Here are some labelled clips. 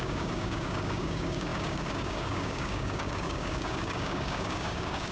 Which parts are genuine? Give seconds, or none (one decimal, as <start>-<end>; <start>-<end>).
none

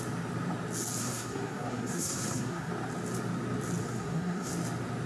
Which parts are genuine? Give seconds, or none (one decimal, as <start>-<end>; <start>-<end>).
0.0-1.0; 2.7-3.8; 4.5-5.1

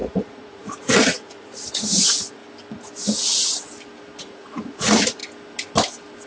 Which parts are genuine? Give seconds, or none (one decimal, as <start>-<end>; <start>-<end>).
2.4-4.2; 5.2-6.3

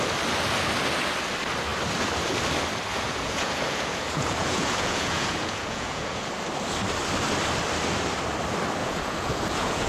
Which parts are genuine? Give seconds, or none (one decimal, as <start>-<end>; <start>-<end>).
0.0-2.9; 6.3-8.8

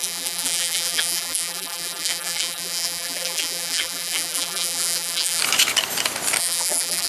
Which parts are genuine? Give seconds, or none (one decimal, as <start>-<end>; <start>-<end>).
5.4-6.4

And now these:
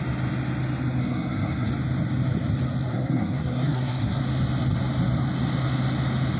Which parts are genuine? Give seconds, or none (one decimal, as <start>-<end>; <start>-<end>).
0.0-1.0; 1.7-2.9; 4.2-6.4

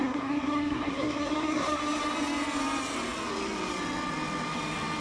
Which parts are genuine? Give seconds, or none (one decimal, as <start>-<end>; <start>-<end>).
1.8-5.0